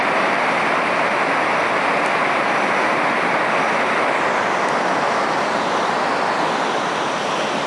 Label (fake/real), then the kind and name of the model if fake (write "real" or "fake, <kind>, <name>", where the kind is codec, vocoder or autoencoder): real